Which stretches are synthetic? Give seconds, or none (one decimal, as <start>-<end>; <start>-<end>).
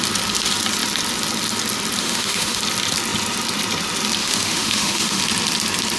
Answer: 2.0-2.6; 4.2-5.2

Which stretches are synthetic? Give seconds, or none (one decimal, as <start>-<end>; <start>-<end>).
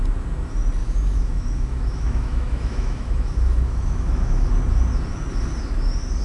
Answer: 0.8-4.5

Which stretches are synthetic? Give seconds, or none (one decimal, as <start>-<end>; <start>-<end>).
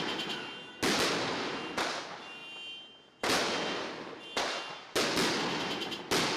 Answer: none